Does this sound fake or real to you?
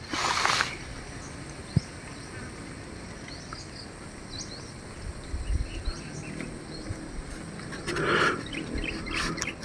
real